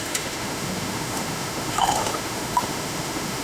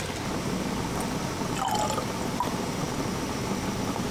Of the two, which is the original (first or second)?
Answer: second